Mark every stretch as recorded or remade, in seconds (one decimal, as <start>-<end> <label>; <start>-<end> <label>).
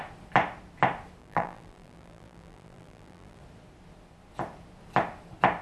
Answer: 0.0-1.2 recorded; 1.2-3.4 remade; 3.4-5.6 recorded